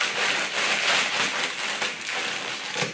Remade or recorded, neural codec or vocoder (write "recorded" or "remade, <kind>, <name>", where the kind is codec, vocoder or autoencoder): recorded